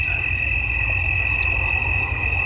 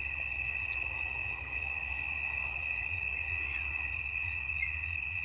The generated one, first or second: second